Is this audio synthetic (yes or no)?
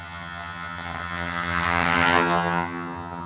yes